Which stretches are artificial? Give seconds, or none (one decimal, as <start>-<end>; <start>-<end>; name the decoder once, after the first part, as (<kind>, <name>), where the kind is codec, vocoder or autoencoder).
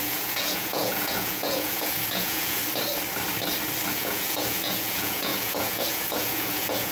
0.0-2.6 (vocoder, Vocos); 3.9-6.9